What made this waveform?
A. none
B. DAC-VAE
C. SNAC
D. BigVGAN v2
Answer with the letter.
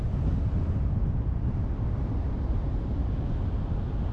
A